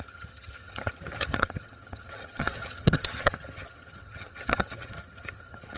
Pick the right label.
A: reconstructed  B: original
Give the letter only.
A